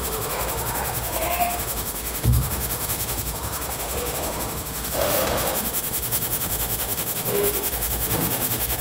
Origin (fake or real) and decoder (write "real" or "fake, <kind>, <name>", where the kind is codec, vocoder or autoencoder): fake, autoencoder, DAC-VAE